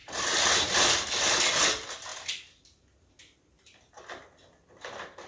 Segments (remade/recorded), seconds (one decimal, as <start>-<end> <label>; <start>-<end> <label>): 0.0-0.9 remade; 0.9-5.3 recorded